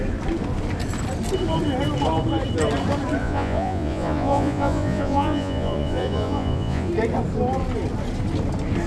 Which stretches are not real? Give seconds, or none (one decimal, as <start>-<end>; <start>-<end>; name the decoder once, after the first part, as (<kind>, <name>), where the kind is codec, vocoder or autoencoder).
3.2-6.9 (vocoder, Vocos)

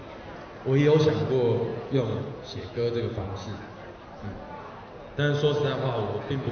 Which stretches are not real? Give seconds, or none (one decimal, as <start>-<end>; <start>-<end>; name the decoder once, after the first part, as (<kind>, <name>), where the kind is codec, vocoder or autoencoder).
1.7-3.6 (vocoder, Vocos)

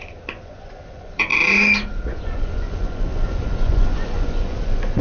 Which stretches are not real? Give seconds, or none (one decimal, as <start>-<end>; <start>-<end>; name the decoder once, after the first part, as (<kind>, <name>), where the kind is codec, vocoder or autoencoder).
0.0-1.3 (vocoder, Vocos); 2.1-5.0

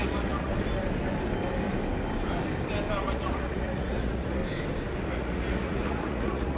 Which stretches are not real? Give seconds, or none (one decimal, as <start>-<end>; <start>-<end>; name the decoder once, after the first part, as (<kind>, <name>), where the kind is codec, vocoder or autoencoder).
0.0-0.5 (vocoder, Vocos); 3.0-4.4; 5.1-6.6

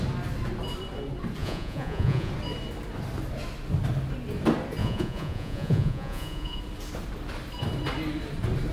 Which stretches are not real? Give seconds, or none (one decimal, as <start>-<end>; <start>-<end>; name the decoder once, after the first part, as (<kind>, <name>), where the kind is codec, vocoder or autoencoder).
1.4-2.3 (vocoder, Vocos); 4.8-6.6

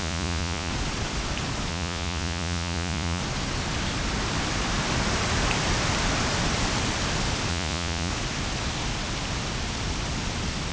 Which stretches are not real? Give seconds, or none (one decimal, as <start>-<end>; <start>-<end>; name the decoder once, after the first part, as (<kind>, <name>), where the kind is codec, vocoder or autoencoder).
0.0-0.7 (vocoder, Vocos); 1.7-3.2; 7.5-8.1

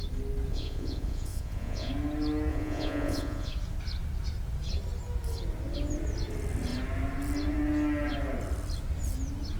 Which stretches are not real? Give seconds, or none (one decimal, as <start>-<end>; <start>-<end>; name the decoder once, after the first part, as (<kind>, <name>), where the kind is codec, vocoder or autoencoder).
0.5-1.9 (vocoder, Vocos); 2.5-3.5